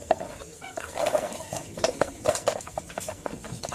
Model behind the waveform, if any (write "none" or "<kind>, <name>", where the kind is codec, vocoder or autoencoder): codec, SNAC